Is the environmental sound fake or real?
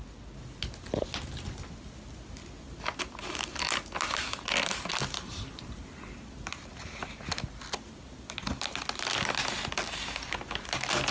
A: real